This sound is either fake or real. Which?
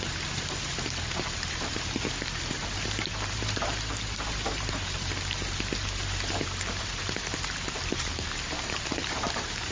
fake